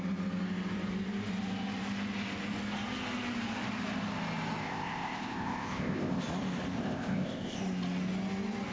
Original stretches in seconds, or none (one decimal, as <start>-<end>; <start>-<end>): 0.0-4.6; 6.2-6.8; 7.6-8.7